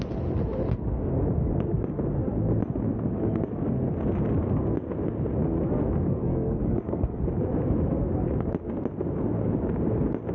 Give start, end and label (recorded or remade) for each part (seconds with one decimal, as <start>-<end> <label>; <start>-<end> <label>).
0.0-6.1 recorded; 6.1-7.2 remade; 7.2-10.3 recorded

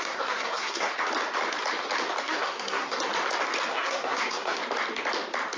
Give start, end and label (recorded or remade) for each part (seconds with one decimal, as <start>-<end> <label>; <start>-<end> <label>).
0.0-0.9 remade; 0.9-2.2 recorded; 2.2-3.1 remade; 3.1-3.7 recorded; 3.7-4.6 remade; 4.6-5.6 recorded

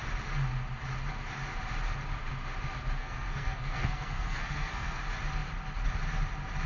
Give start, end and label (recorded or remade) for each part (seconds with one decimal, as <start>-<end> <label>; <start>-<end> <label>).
0.0-3.0 recorded; 3.0-5.0 remade; 5.0-6.7 recorded

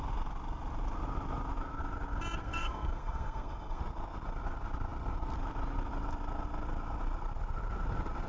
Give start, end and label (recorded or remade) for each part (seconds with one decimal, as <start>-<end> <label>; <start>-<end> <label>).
0.0-2.4 recorded; 2.4-3.8 remade; 3.8-8.3 recorded